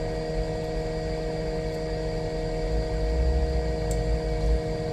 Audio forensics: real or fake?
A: real